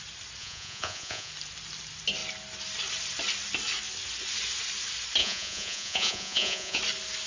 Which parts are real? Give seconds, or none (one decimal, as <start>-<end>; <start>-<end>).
0.0-0.4; 1.3-5.2; 6.8-7.3